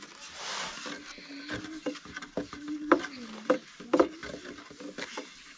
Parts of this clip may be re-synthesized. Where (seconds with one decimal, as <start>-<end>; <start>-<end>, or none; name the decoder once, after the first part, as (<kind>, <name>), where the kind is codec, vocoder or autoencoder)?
none